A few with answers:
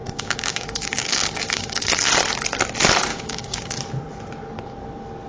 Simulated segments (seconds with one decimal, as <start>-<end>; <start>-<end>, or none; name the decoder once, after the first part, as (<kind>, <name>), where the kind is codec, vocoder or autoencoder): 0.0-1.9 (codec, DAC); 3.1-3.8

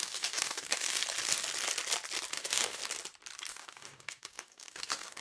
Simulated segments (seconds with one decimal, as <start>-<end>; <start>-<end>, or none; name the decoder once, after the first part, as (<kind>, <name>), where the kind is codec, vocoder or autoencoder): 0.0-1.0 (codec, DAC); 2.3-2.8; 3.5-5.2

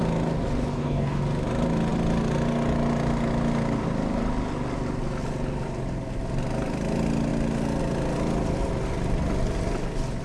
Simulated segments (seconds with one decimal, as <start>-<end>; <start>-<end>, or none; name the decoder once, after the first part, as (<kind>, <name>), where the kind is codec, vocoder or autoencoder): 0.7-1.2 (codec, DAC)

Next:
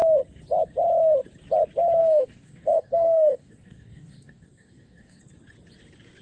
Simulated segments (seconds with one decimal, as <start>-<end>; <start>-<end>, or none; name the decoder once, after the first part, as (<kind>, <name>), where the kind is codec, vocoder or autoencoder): 2.0-5.2 (codec, DAC)